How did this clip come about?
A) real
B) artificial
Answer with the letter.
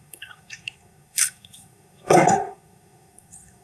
B